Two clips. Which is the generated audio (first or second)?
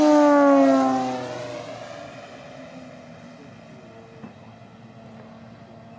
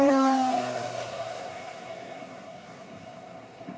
second